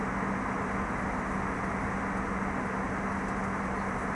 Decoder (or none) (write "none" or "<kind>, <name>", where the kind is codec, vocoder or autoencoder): none